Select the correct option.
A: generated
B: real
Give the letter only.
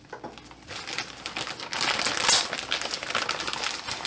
B